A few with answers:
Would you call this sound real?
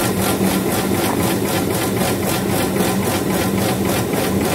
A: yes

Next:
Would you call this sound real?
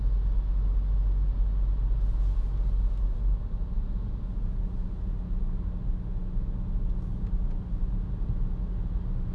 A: yes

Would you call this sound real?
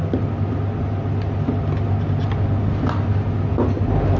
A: yes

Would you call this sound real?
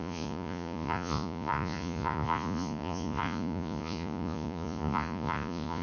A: no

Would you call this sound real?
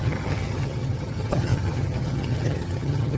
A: no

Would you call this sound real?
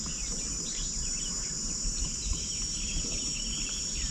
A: no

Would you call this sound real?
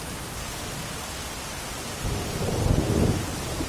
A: yes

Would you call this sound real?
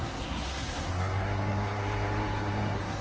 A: no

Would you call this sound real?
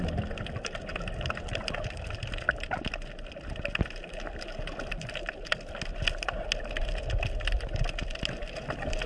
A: yes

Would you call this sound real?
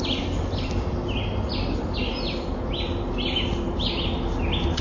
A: yes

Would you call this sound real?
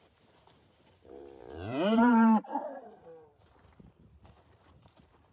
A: no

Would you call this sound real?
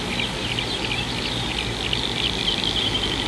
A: yes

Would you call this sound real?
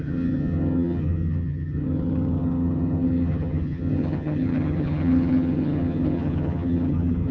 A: no